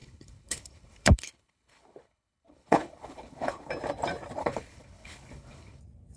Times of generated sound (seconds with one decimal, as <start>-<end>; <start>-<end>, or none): 0.0-3.7; 4.4-5.8